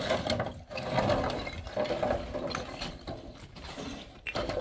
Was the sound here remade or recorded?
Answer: recorded